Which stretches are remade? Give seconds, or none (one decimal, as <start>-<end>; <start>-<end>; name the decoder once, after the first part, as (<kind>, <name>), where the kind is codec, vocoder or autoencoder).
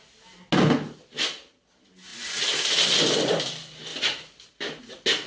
none